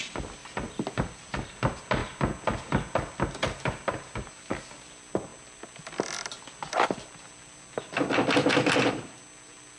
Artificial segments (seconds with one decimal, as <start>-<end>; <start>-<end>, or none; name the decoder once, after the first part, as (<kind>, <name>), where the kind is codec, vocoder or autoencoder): 0.4-1.5 (vocoder, BigVGAN v2)